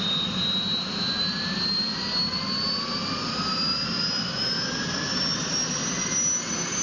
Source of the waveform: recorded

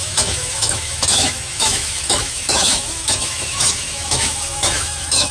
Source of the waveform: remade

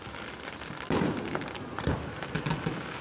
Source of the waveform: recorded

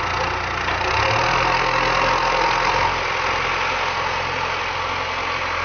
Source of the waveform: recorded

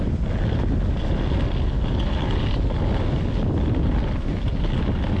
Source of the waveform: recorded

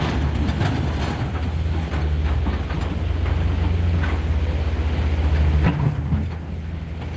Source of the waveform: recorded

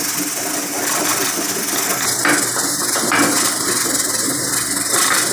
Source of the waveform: recorded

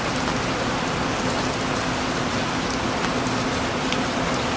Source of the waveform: recorded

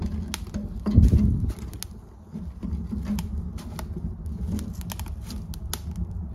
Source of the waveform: recorded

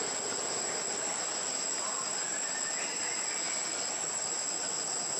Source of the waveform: recorded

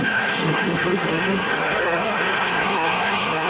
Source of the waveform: remade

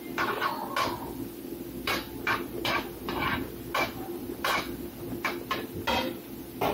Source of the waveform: recorded